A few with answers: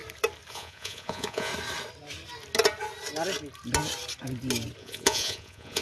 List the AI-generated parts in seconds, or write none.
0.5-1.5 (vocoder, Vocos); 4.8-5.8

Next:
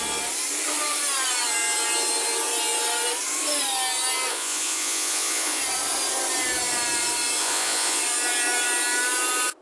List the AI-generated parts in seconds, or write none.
4.3-5.6 (vocoder, Vocos); 7.4-8.0

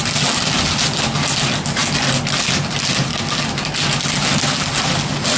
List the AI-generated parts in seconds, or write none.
none